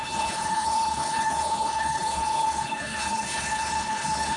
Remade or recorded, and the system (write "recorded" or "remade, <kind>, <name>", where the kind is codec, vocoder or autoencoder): remade, codec, HILCodec